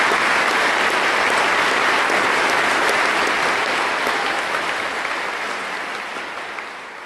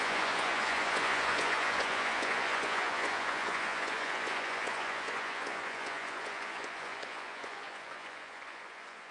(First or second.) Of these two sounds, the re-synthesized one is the second